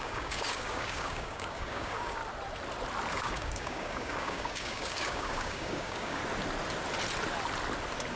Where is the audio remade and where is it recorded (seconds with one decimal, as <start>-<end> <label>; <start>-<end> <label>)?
0.0-2.2 remade; 2.2-3.1 recorded; 3.1-6.2 remade; 6.2-8.2 recorded

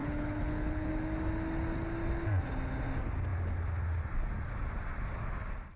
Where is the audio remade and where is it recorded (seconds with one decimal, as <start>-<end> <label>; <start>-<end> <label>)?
0.0-0.9 remade; 0.9-5.8 recorded

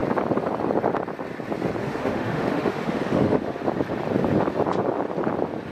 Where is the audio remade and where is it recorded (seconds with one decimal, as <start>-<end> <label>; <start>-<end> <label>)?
0.0-1.8 recorded; 1.8-3.6 remade; 3.6-5.7 recorded

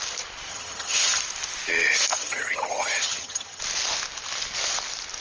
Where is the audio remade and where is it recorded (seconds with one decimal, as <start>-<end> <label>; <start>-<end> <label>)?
0.0-0.5 recorded; 0.5-1.2 remade; 1.2-2.1 recorded; 2.1-3.6 remade; 3.6-5.2 recorded

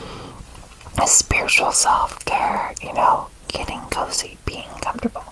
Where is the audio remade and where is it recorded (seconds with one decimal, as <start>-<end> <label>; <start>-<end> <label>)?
0.0-1.9 recorded; 1.9-2.5 remade; 2.5-5.3 recorded

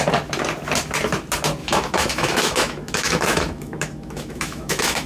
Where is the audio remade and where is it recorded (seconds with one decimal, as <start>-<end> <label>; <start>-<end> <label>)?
0.0-1.6 recorded; 1.6-5.1 remade

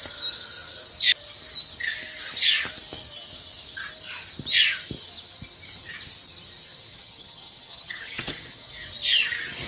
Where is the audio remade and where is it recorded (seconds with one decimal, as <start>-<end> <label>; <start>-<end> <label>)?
0.0-6.9 recorded; 6.9-8.7 remade; 8.7-9.7 recorded